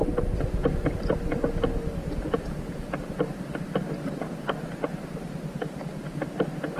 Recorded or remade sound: recorded